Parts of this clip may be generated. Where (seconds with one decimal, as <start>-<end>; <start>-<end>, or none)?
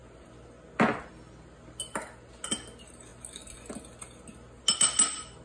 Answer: none